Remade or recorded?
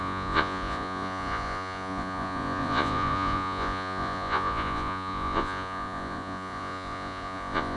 remade